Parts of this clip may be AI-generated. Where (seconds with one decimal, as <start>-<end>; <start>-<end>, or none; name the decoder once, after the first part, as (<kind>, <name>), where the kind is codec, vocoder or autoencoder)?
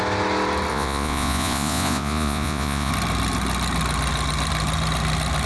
0.7-2.9 (vocoder, Vocos)